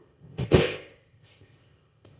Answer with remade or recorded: remade